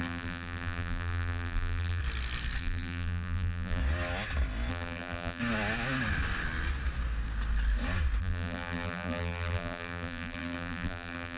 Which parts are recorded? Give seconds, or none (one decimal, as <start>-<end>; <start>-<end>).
2.0-2.6; 3.8-4.7; 5.4-8.2